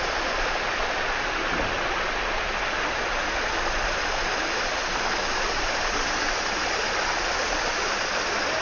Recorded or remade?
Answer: recorded